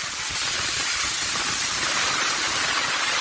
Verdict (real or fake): real